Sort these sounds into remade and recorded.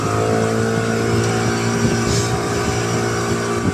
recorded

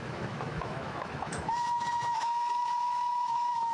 remade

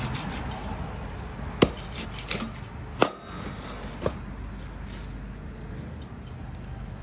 recorded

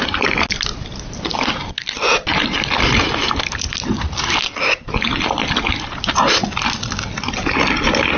recorded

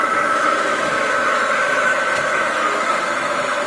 remade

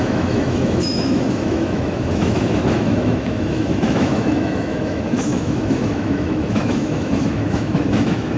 remade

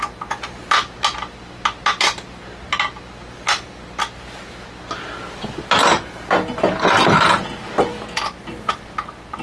recorded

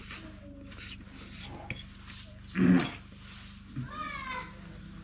recorded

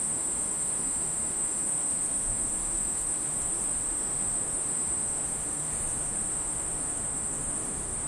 remade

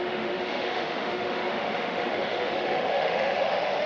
remade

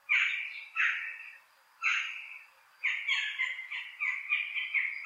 recorded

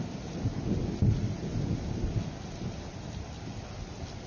recorded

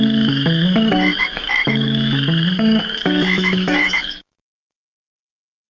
remade